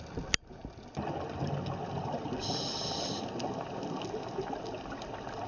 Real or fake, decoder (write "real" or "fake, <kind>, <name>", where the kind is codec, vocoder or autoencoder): real